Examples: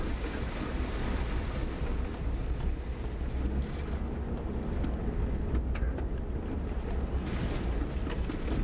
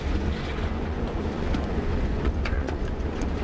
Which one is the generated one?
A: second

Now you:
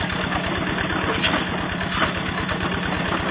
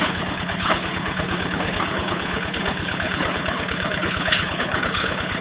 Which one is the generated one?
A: second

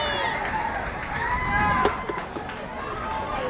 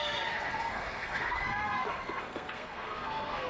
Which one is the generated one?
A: second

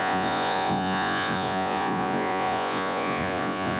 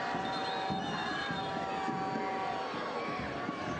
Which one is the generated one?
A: first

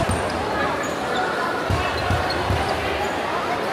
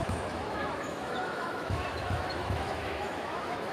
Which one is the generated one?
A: second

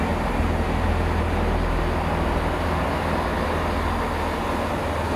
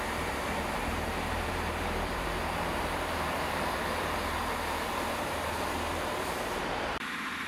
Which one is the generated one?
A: second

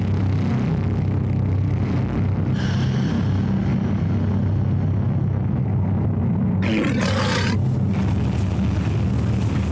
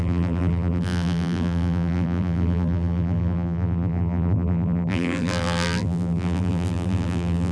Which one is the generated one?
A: second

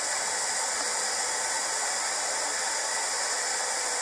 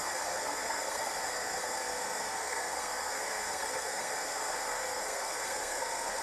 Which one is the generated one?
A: second